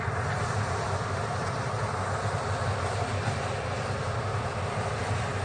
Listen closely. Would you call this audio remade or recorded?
recorded